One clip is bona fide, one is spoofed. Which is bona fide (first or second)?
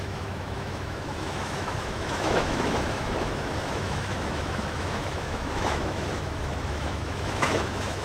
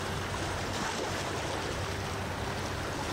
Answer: second